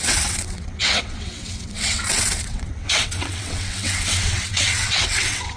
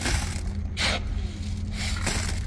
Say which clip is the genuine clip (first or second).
second